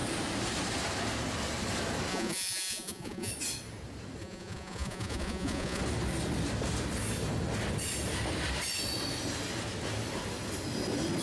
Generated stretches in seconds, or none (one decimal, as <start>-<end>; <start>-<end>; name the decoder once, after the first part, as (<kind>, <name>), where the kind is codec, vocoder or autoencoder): 2.1-3.3 (vocoder, Vocos); 4.2-5.8

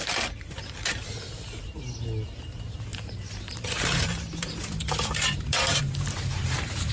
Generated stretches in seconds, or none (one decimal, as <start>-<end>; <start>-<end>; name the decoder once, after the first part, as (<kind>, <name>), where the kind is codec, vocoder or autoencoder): 2.5-6.9 (vocoder, BigVGAN v2)

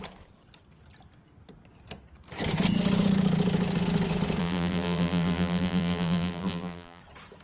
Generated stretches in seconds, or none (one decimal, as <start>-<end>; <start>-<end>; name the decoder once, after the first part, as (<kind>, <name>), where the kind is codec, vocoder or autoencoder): 4.4-7.0 (vocoder, BigVGAN v2)